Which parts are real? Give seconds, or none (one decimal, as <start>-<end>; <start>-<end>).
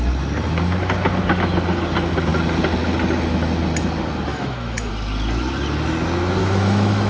0.0-4.3; 4.9-6.4